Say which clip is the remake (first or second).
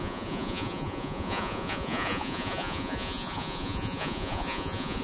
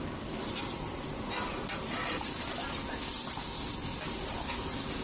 first